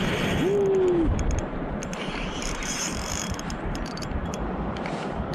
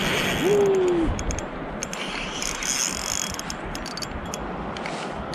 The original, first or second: second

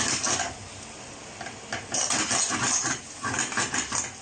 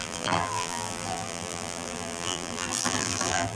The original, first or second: first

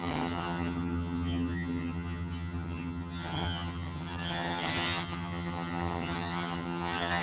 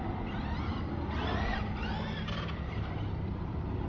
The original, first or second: second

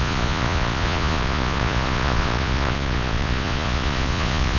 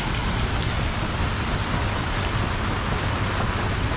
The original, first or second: second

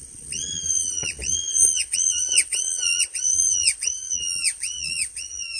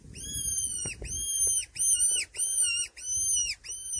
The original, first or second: second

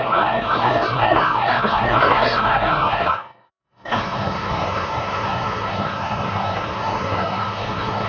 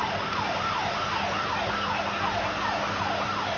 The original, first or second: second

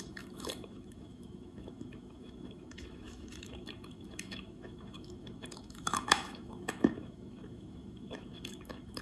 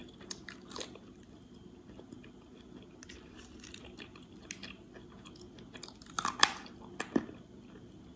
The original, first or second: second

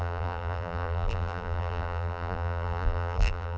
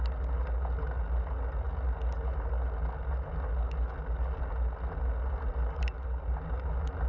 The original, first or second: second